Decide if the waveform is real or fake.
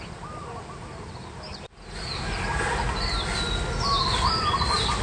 real